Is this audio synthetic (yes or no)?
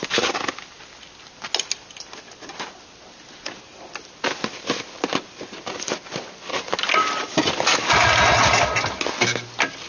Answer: no